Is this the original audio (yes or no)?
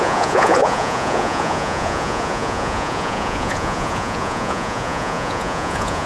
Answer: no